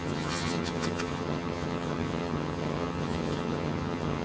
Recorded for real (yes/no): no